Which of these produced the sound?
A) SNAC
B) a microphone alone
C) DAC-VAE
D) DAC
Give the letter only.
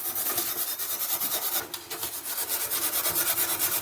B